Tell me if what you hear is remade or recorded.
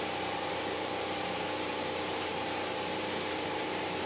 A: remade